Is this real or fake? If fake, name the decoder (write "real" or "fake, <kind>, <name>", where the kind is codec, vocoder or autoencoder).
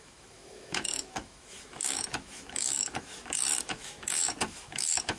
fake, autoencoder, DAC-VAE